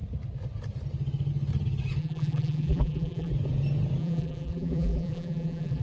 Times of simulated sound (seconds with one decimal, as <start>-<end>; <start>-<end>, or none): 2.0-3.3; 4.0-5.8